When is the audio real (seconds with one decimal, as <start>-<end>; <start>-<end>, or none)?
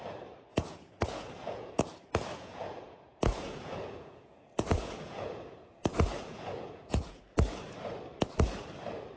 0.0-0.5; 1.8-2.3; 7.2-9.2